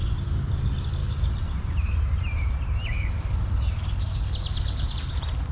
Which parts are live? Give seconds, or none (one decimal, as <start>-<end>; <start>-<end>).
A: 0.0-1.0; 4.2-5.5